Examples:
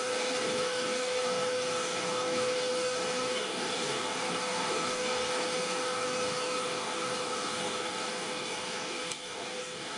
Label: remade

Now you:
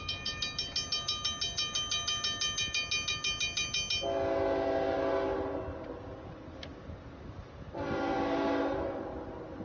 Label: recorded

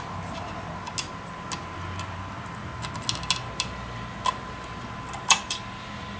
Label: recorded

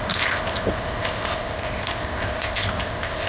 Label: remade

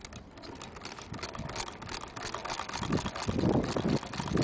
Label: recorded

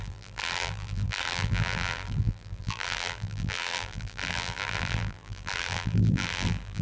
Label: remade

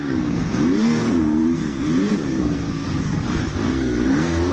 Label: remade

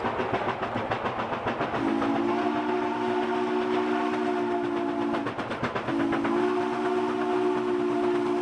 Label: recorded